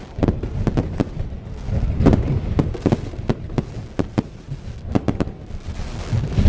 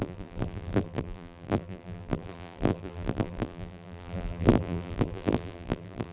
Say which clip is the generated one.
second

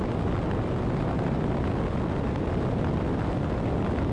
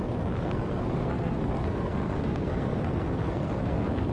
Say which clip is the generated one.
second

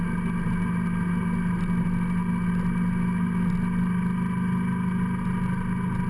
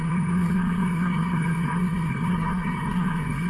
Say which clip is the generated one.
second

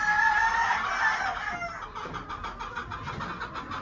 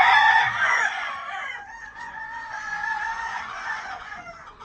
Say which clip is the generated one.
second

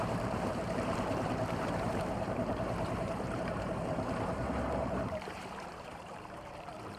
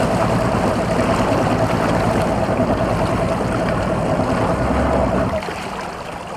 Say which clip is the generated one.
first